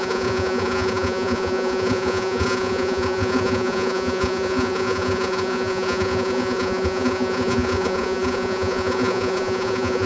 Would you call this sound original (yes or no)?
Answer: no